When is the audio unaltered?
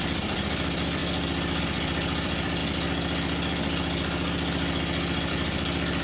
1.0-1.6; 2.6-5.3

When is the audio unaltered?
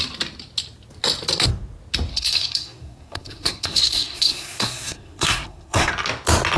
0.0-2.1; 5.9-6.6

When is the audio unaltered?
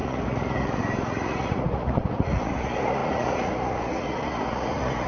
none